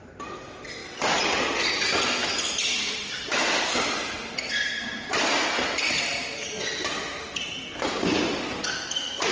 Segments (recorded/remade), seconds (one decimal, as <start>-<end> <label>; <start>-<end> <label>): 0.0-9.3 recorded